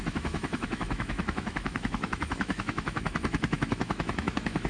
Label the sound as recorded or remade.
remade